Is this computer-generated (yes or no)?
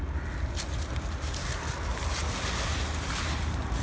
no